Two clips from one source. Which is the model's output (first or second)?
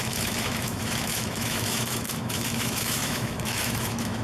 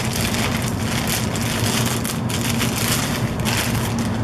first